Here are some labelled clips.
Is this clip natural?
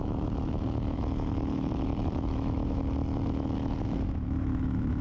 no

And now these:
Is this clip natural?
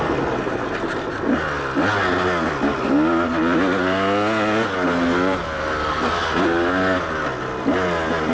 yes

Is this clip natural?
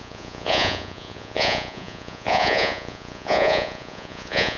no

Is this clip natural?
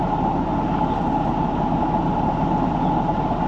yes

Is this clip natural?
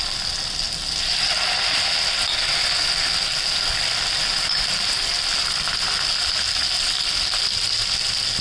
yes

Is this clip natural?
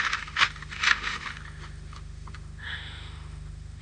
no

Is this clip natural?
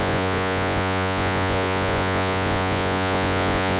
no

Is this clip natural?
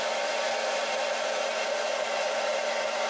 yes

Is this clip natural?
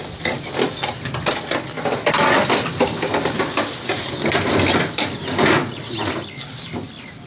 yes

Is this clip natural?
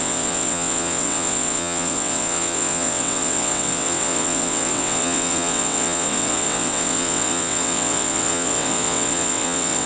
no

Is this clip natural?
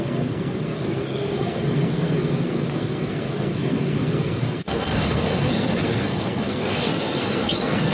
no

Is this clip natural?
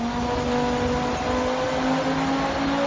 yes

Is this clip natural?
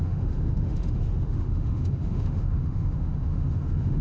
no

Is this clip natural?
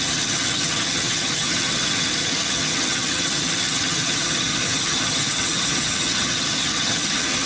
no